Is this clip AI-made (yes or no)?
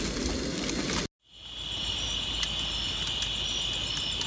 no